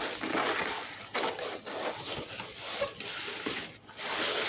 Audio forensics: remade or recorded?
recorded